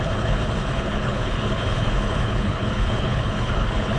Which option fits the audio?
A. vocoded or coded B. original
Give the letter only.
A